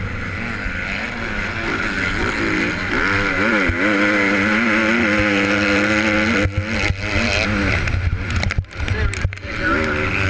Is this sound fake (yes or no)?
no